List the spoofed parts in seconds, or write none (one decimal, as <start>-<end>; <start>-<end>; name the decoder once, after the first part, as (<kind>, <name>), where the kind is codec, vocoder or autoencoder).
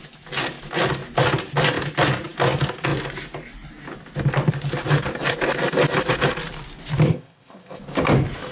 7.1-7.8 (codec, ZipCodec)